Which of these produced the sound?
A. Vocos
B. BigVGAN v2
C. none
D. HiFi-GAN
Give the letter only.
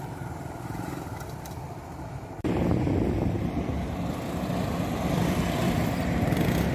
C